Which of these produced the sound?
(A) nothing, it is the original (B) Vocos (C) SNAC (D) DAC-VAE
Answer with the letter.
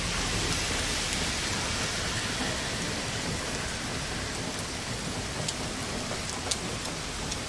A